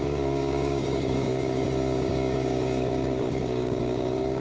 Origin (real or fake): fake